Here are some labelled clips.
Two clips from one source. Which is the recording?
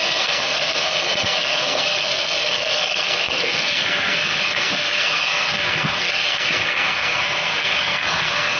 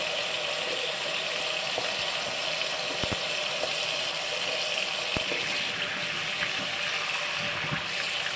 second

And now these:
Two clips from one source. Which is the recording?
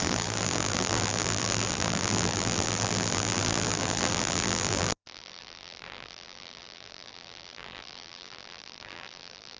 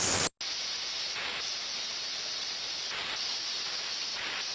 second